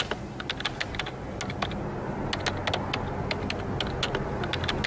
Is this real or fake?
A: real